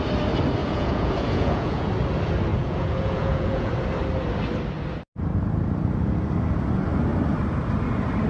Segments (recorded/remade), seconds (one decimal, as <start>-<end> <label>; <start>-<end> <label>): 0.0-0.6 recorded; 0.6-1.9 remade; 1.9-2.5 recorded; 2.5-3.7 remade; 3.7-8.3 recorded